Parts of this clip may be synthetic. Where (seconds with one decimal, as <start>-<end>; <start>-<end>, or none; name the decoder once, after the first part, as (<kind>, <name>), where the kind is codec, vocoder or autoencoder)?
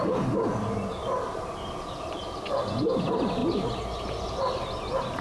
none